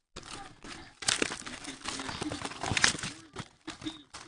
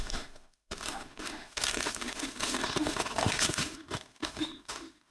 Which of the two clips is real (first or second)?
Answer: first